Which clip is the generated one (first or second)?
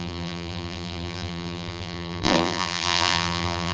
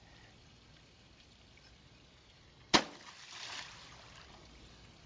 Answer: first